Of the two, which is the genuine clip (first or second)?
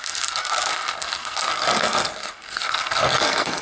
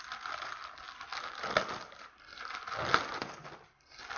second